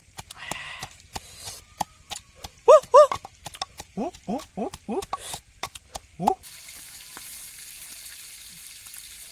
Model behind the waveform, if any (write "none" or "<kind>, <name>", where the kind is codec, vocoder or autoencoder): none